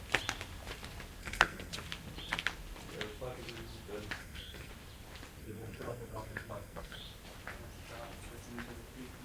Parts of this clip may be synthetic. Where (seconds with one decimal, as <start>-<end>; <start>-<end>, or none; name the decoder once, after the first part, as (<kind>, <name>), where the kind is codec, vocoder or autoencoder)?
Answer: 1.2-1.7 (codec, SNAC); 4.2-4.7; 5.4-7.0